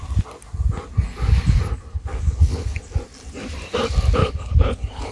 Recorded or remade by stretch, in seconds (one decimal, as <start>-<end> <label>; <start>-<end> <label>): 0.0-1.9 recorded; 1.9-2.8 remade; 2.8-4.2 recorded; 4.2-5.1 remade